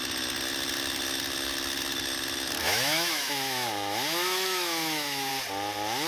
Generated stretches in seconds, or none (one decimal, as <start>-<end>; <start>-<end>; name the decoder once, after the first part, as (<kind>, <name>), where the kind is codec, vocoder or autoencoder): 2.6-5.3 (autoencoder, DAC-VAE)